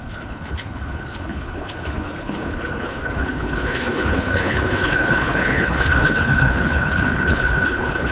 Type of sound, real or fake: fake